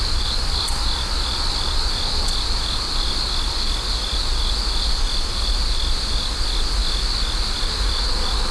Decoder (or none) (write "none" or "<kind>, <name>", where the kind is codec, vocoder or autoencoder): none